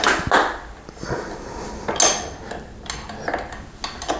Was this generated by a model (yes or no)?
no